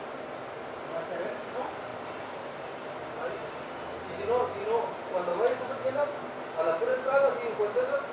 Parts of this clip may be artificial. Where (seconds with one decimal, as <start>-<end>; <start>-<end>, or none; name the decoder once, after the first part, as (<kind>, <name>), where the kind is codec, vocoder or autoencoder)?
1.9-2.6 (vocoder, BigVGAN v2)